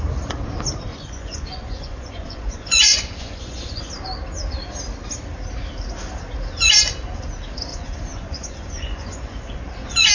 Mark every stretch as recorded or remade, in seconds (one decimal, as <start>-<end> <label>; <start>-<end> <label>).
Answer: 0.0-0.9 recorded; 0.9-3.9 remade; 3.9-7.7 recorded; 7.7-9.6 remade; 9.6-10.1 recorded